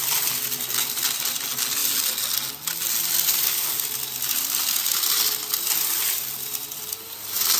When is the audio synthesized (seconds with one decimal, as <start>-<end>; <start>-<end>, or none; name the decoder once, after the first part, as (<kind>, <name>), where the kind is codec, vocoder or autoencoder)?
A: none